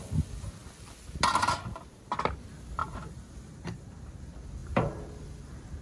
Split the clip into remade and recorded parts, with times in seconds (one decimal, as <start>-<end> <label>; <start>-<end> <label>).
0.0-5.8 recorded